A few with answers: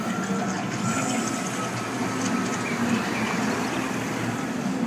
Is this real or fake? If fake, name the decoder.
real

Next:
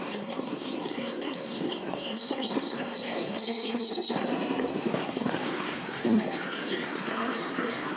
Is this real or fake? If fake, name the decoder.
fake, codec, SNAC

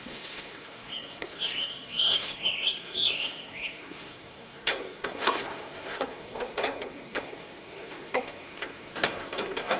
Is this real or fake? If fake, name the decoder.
fake, codec, SNAC